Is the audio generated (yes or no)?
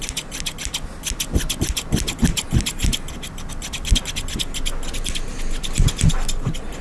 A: no